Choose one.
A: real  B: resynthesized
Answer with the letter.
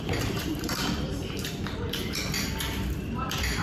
B